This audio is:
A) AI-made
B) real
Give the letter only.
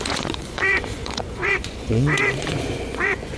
A